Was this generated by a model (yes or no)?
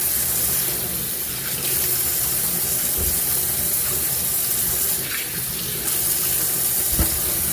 no